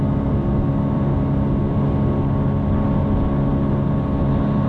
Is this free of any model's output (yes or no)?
yes